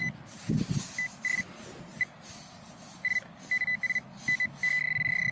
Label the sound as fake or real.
real